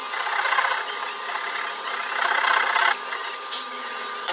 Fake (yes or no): no